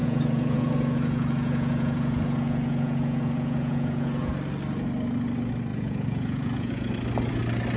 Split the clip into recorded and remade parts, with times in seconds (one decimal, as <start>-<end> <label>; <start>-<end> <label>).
0.0-4.3 remade; 4.3-5.7 recorded; 5.7-6.9 remade; 6.9-7.8 recorded